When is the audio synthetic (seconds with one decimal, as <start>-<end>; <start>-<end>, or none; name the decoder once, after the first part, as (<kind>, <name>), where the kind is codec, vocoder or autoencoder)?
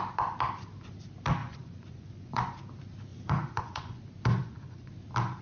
1.4-2.4 (vocoder, Vocos); 3.1-4.0; 4.4-4.9